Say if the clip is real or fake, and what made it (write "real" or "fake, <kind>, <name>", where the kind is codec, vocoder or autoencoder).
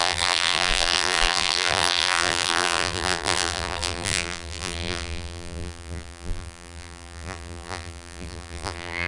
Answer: fake, vocoder, BigVGAN v2